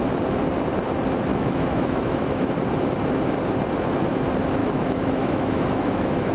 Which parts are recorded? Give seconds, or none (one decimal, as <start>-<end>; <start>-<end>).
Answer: 0.0-1.3; 2.5-4.6